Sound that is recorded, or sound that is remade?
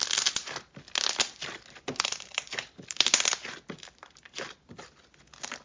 recorded